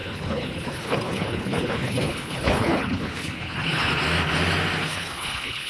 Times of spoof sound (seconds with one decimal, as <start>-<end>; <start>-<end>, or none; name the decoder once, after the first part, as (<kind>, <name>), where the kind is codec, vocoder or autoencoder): 0.0-3.9 (codec, HILCodec); 4.8-5.7